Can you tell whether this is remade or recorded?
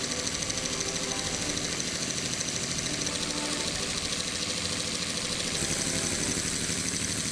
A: recorded